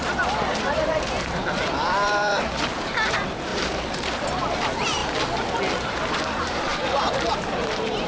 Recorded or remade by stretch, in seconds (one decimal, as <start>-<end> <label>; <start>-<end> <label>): 0.0-5.0 remade; 5.0-5.8 recorded; 5.8-8.1 remade